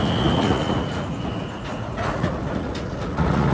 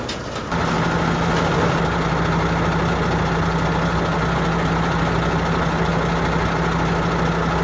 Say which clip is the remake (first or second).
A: first